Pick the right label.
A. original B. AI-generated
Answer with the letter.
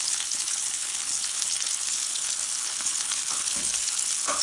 B